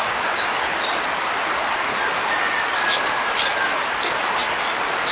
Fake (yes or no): no